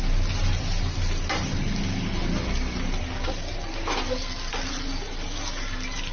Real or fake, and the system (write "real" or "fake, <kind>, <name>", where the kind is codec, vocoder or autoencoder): real